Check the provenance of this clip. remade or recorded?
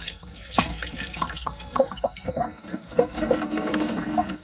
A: remade